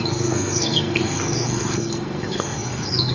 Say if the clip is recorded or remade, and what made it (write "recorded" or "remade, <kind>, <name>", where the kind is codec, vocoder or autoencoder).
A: remade, codec, SNAC